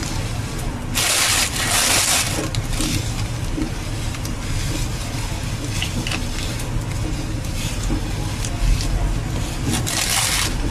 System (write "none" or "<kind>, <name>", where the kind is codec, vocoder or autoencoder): none